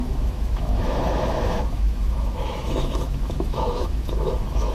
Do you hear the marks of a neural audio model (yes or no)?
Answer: yes